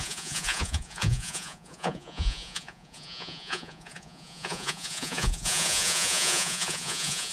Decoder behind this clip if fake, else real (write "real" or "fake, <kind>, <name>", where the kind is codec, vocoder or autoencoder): fake, vocoder, Vocos